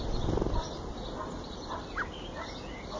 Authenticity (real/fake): real